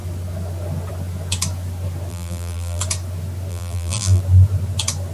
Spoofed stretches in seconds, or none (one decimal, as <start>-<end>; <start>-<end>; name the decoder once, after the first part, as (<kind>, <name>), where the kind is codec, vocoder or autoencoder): 2.1-2.8 (vocoder, BigVGAN v2); 3.5-4.2